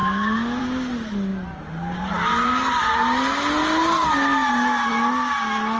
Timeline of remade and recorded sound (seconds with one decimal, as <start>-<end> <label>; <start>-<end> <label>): 0.0-5.8 recorded